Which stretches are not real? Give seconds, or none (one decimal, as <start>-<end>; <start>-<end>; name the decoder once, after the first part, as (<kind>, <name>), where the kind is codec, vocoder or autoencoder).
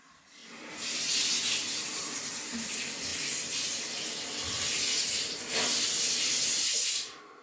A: 0.0-7.4 (vocoder, BigVGAN v2)